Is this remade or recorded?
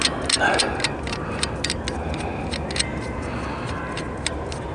recorded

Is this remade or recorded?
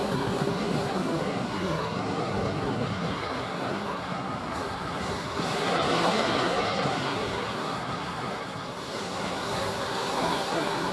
remade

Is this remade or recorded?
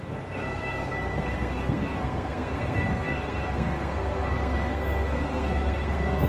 remade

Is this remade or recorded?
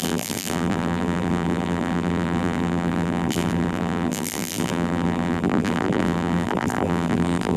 remade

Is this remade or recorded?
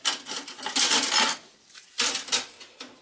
recorded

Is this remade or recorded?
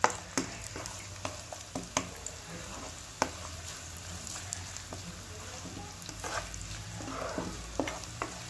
recorded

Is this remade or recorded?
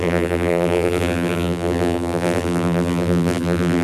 remade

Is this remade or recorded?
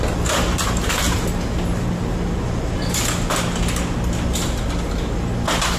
recorded